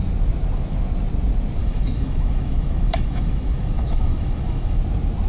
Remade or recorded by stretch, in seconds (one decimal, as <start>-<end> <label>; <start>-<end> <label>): 0.0-1.6 recorded; 1.6-4.8 remade; 4.8-5.3 recorded